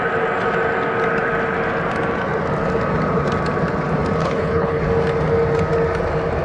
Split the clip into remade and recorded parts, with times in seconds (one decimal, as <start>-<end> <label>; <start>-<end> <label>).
0.0-4.2 recorded; 4.2-4.8 remade; 4.8-6.4 recorded